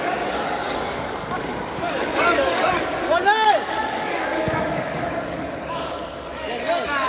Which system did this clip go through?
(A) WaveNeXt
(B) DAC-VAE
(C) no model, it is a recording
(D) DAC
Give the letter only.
D